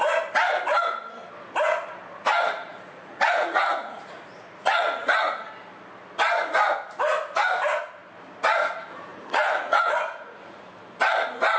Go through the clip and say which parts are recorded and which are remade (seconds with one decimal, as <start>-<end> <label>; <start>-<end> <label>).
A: 0.0-2.7 recorded; 2.7-5.5 remade; 5.5-9.1 recorded; 9.1-10.7 remade; 10.7-11.6 recorded